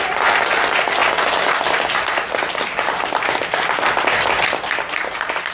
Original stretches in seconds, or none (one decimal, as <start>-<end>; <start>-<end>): 0.0-5.5